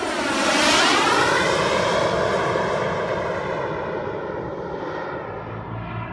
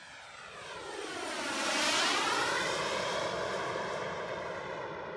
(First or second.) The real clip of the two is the first